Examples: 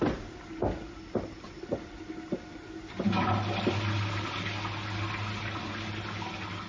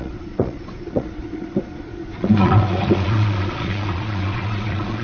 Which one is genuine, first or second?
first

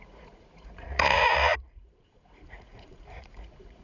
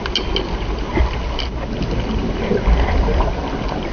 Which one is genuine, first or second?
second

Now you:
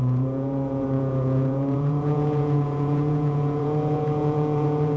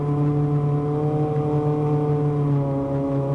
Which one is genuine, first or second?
second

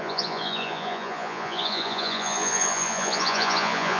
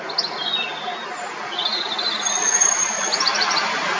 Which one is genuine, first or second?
second